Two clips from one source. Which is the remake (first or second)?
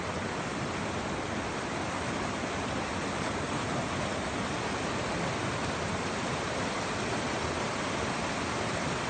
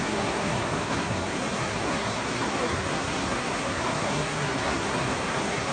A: second